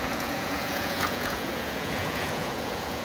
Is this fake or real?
fake